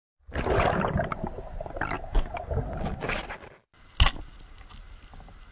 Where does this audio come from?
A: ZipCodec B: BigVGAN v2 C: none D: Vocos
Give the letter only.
C